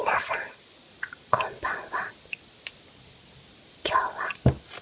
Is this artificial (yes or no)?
no